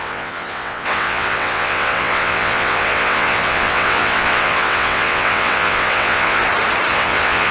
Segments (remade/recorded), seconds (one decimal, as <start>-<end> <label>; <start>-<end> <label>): 0.0-6.4 remade; 6.4-6.9 recorded; 6.9-7.5 remade